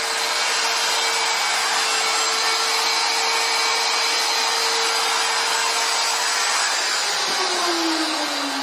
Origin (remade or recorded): recorded